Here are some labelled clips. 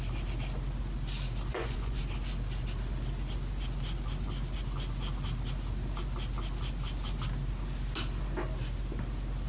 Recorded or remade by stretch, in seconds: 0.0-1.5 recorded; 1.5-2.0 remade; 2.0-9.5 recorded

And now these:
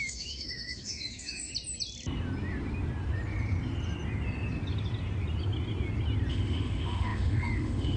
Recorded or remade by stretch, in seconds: 0.0-1.5 remade; 1.5-6.3 recorded; 6.3-8.0 remade